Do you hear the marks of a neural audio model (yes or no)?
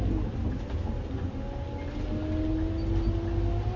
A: no